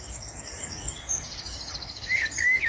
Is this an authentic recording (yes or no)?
no